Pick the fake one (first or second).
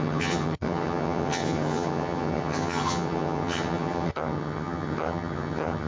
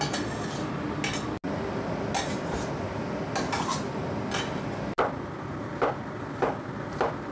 first